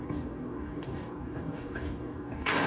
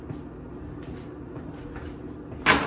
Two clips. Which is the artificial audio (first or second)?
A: first